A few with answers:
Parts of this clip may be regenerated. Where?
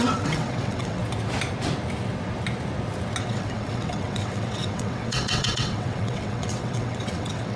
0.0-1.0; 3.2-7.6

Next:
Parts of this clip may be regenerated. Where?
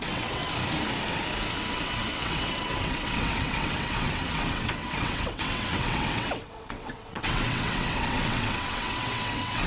0.0-0.4; 1.7-9.7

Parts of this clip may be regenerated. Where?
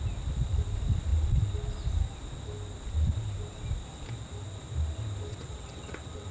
5.3-6.3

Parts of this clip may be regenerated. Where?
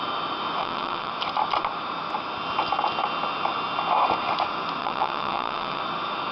0.6-1.1; 4.8-5.8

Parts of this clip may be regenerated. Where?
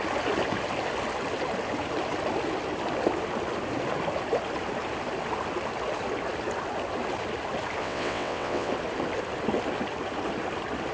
7.8-8.7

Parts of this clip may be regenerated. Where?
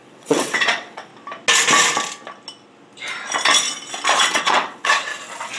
0.0-1.1; 4.2-5.1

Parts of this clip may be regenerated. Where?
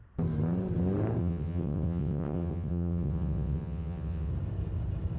1.2-4.3